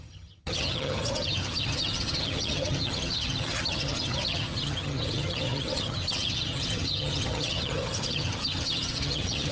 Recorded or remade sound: remade